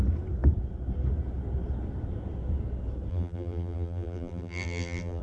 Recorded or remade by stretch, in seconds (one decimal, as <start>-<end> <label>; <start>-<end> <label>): 0.0-3.1 recorded; 3.1-5.2 remade